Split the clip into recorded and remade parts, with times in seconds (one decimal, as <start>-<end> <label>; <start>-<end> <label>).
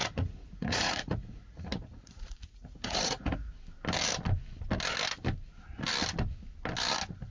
0.0-3.5 remade; 3.5-7.3 recorded